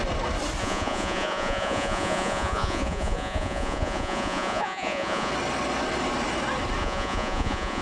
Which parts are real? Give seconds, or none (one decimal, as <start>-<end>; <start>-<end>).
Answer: 0.0-0.6; 5.3-6.8